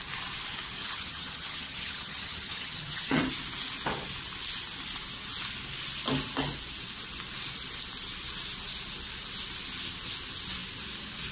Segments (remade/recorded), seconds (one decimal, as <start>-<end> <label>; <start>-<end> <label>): 0.0-0.8 recorded; 0.8-3.2 remade; 3.2-11.3 recorded